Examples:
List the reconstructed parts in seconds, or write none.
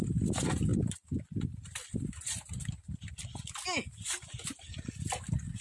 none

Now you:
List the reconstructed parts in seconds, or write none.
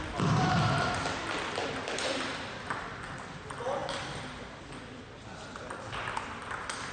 none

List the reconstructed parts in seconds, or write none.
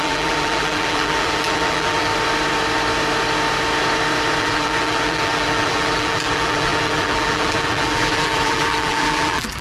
0.0-2.1 (vocoder, BigVGAN v2); 4.4-9.6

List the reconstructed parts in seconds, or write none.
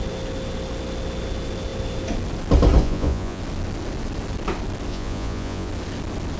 2.8-3.4 (vocoder, Vocos); 4.9-5.7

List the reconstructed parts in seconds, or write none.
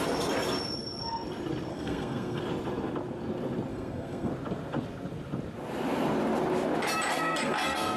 1.7-2.4 (codec, SNAC); 3.7-4.3; 7.1-8.0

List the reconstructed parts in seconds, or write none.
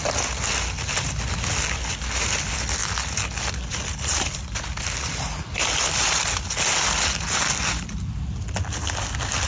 none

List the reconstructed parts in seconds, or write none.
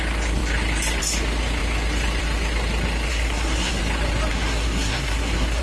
3.1-3.8 (codec, SNAC); 4.3-5.6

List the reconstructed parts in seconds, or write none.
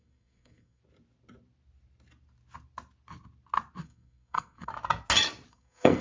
0.0-0.8 (codec, SNAC); 3.8-4.7; 5.5-6.0